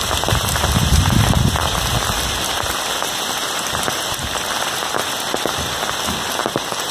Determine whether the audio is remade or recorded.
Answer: recorded